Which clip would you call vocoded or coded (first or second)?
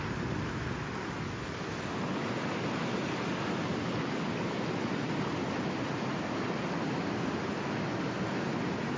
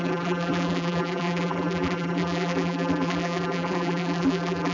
second